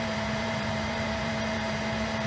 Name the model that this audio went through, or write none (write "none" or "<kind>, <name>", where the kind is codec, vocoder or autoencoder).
vocoder, BigVGAN v2